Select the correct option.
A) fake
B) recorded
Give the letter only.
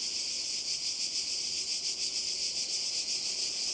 B